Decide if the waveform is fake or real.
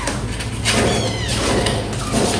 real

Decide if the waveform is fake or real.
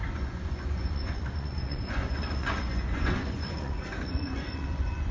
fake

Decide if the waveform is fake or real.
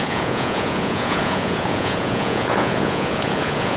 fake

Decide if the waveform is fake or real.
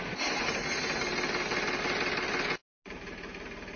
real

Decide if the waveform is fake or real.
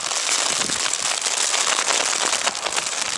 real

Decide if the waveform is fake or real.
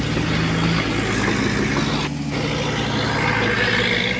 real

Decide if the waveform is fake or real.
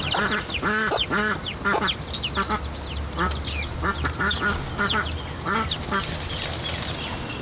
real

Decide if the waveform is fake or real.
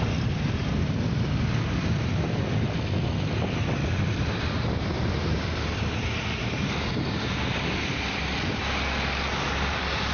real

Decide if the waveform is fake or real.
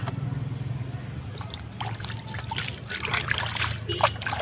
real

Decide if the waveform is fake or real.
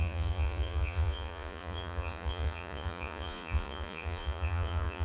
fake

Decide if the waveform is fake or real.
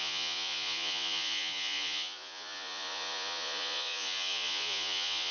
fake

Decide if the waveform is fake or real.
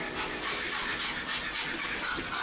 real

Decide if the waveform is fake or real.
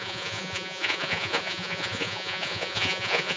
fake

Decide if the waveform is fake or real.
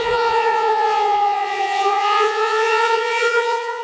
fake